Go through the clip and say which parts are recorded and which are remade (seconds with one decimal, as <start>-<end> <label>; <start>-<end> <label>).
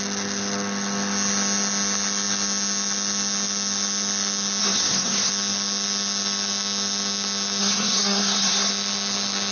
0.0-4.6 recorded; 4.6-5.3 remade; 5.3-7.6 recorded; 7.6-8.7 remade; 8.7-9.5 recorded